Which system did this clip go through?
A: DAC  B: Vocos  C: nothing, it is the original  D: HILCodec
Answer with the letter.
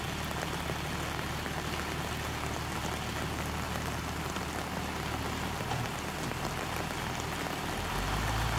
C